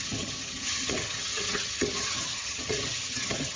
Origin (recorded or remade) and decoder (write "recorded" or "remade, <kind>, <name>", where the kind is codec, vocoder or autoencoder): remade, vocoder, HiFi-GAN